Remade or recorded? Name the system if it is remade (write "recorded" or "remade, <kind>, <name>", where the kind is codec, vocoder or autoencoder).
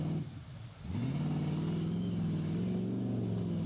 recorded